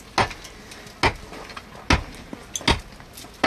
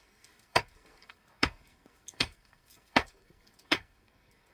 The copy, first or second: second